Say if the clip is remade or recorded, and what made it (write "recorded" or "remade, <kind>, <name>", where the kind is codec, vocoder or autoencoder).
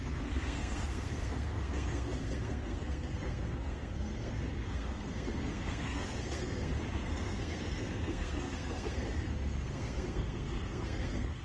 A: remade, codec, SNAC